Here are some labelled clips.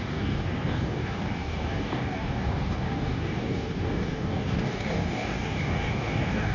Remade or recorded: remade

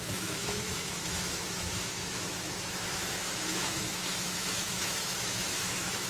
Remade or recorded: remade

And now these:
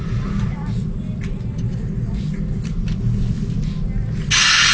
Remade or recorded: recorded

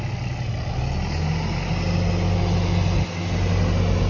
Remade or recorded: recorded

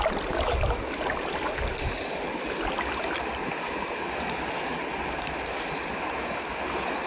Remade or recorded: recorded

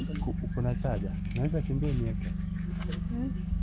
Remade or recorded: remade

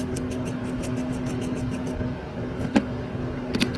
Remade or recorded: remade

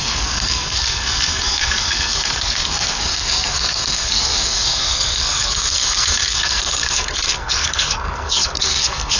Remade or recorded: remade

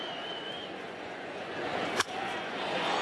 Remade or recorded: remade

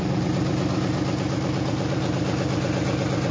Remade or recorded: recorded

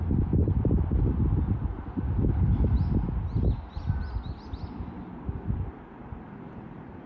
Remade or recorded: recorded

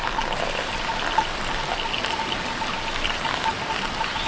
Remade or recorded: recorded